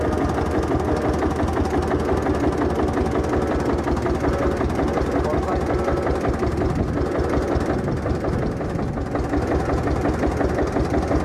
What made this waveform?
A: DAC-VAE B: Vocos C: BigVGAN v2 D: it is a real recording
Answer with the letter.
D